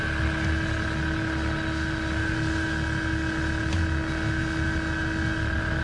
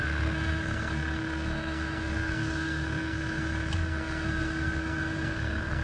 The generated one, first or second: second